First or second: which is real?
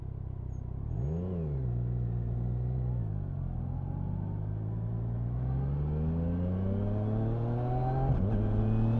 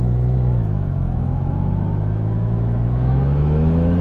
first